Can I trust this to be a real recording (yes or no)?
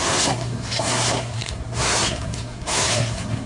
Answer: no